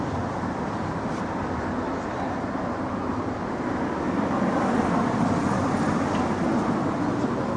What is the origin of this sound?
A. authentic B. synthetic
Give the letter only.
A